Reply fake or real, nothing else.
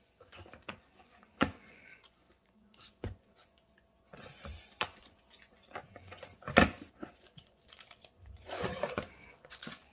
fake